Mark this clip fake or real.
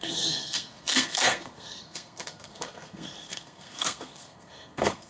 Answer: fake